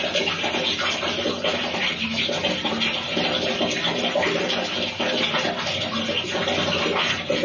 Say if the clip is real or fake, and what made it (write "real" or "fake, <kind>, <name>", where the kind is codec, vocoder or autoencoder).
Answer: real